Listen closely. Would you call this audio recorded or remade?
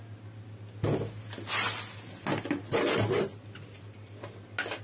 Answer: recorded